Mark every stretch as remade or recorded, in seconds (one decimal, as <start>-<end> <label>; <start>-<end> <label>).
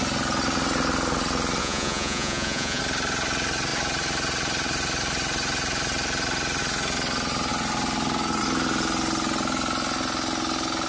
0.0-1.6 recorded; 1.6-2.8 remade; 2.8-10.9 recorded